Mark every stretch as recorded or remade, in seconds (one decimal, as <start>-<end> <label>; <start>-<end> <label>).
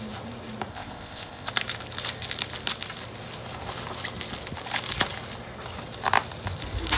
0.0-0.7 recorded; 0.7-1.5 remade; 1.5-7.0 recorded